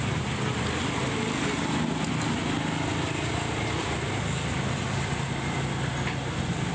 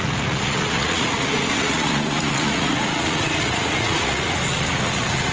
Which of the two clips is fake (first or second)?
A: second